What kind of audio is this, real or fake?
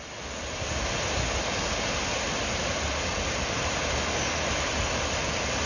real